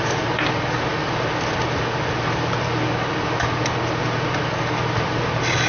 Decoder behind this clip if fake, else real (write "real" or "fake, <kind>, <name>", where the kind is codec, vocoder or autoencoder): real